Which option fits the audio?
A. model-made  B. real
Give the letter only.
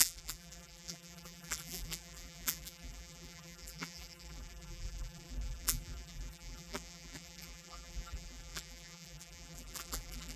A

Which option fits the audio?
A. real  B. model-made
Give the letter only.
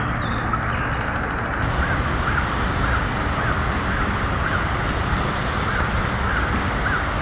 A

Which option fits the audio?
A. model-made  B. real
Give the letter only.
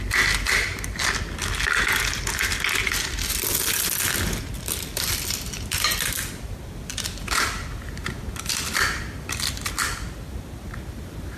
B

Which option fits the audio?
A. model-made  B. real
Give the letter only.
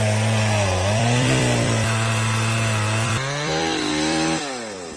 A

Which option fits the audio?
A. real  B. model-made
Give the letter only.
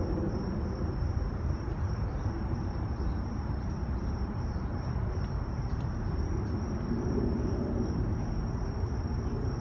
B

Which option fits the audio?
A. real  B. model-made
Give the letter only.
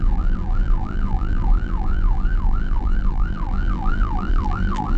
B